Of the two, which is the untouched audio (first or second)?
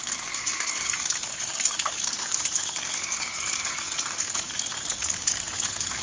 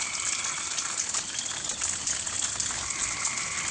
second